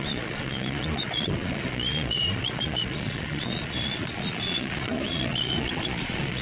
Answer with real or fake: fake